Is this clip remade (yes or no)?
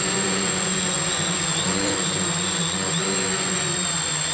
yes